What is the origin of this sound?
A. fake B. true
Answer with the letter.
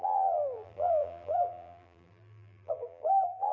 A